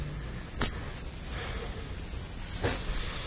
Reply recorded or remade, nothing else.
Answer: recorded